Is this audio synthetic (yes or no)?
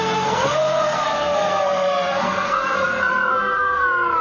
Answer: yes